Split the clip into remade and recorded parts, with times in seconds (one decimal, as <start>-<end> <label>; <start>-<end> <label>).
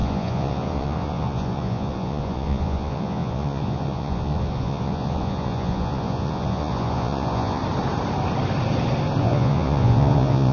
0.0-7.6 remade; 7.6-9.2 recorded; 9.2-10.5 remade